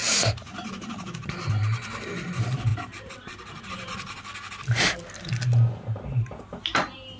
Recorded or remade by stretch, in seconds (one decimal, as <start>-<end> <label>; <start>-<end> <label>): 0.0-1.5 remade; 1.5-2.7 recorded; 2.7-3.7 remade; 3.7-7.2 recorded